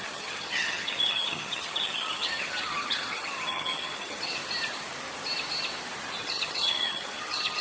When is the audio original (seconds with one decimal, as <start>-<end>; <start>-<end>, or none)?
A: 4.4-6.2